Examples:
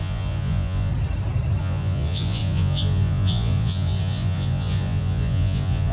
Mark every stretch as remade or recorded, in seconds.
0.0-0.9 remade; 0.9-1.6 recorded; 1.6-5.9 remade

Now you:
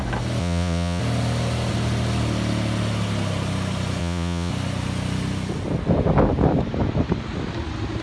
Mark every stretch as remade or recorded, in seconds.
0.0-0.4 recorded; 0.4-1.0 remade; 1.0-4.0 recorded; 4.0-4.5 remade; 4.5-8.0 recorded